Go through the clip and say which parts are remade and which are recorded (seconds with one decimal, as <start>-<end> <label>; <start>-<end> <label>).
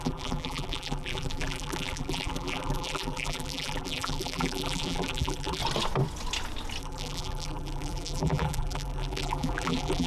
0.0-5.6 remade; 5.6-6.8 recorded; 6.8-10.1 remade